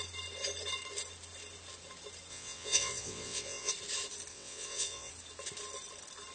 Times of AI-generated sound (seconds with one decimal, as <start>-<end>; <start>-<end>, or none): 2.3-3.7; 4.3-5.1